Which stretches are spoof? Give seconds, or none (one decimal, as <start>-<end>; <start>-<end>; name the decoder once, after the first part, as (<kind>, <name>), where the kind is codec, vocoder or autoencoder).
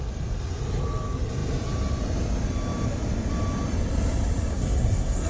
4.5-5.3 (codec, SNAC)